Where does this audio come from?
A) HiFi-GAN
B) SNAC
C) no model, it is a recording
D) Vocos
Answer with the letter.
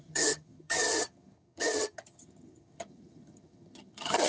A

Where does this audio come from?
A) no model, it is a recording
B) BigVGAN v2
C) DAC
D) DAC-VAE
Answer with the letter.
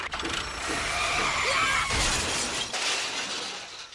A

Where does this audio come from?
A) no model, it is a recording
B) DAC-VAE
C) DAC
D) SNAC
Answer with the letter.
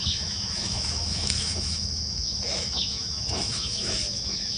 B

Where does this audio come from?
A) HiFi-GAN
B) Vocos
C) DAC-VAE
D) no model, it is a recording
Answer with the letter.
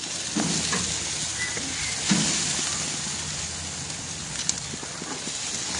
D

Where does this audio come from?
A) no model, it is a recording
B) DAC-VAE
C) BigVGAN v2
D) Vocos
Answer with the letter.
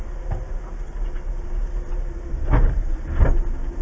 A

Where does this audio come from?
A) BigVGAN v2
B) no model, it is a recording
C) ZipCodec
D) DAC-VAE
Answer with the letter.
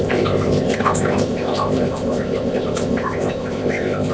C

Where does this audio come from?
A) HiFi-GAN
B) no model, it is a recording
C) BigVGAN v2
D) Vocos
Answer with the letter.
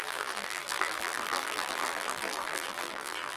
C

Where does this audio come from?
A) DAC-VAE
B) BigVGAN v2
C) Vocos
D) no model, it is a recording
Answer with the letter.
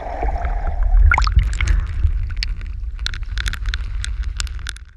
D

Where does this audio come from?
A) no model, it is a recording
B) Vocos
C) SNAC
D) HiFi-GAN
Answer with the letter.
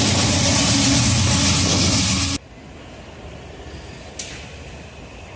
A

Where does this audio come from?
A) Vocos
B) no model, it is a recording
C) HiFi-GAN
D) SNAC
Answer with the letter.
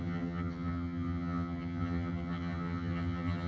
C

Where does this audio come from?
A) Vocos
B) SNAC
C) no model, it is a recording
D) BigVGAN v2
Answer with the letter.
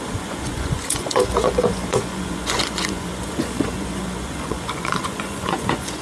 A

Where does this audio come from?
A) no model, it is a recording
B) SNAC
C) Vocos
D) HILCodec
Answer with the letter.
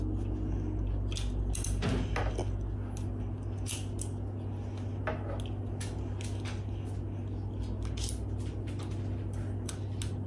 A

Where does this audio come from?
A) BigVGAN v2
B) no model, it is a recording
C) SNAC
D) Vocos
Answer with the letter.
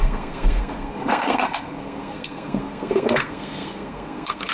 C